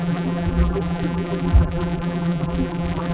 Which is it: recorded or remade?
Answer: remade